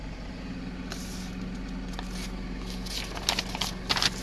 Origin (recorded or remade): recorded